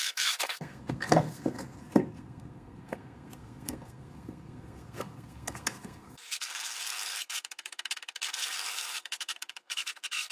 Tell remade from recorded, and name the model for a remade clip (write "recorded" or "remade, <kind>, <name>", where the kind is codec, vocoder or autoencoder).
remade, codec, SNAC